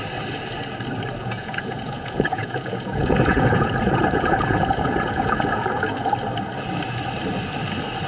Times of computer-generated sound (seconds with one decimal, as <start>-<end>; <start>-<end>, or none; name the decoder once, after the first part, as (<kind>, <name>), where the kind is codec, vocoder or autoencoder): 1.2-6.1 (vocoder, Vocos)